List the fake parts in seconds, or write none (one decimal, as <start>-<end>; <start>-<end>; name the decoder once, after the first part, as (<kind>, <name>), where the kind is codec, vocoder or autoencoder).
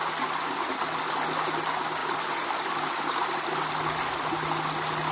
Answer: 2.0-3.3 (vocoder, BigVGAN v2)